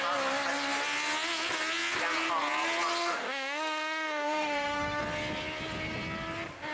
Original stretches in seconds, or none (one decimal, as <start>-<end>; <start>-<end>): 0.0-3.0; 5.0-6.7